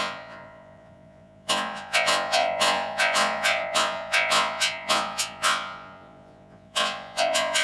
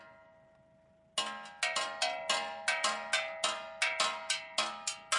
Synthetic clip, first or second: first